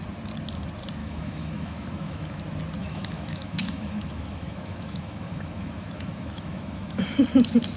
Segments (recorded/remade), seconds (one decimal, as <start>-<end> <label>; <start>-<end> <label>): 0.0-1.0 recorded; 1.0-2.4 remade; 2.4-2.8 recorded; 2.8-7.0 remade; 7.0-7.8 recorded